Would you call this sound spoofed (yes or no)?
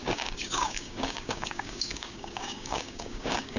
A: yes